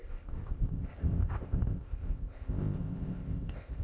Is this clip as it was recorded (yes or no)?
no